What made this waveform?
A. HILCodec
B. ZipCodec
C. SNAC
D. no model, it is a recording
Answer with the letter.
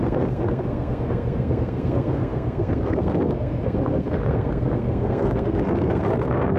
C